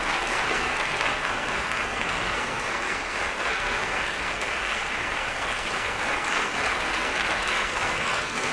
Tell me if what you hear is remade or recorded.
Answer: remade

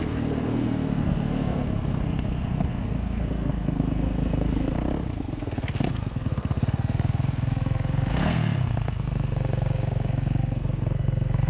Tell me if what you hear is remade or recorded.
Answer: remade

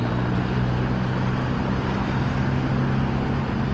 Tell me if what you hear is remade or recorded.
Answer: recorded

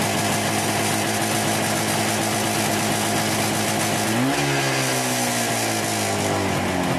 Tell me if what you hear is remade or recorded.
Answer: recorded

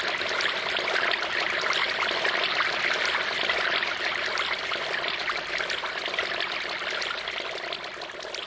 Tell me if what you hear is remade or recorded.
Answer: recorded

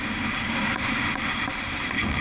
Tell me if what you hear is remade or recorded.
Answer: recorded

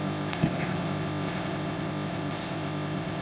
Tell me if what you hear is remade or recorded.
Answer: remade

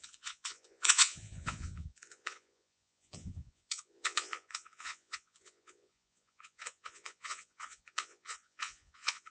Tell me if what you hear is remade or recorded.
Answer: remade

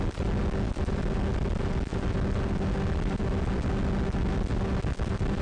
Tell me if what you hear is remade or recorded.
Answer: recorded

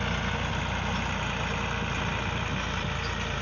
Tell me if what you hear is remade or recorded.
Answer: recorded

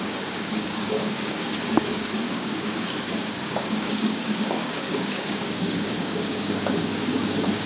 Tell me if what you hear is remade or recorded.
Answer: remade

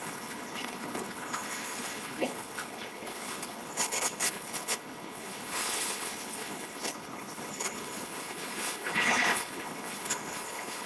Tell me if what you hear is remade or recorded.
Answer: remade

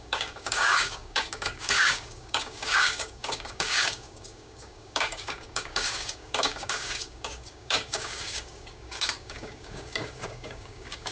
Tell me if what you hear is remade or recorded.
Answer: remade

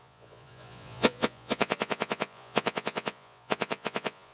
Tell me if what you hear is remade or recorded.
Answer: remade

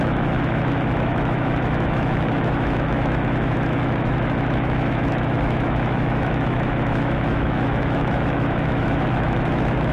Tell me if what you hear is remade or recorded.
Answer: remade